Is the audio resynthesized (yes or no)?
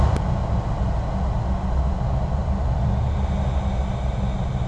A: no